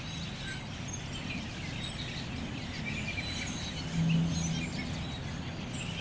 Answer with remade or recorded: recorded